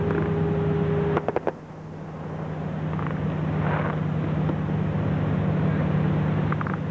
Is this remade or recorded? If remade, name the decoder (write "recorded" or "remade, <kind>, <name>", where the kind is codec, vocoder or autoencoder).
recorded